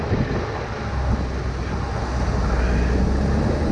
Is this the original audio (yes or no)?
yes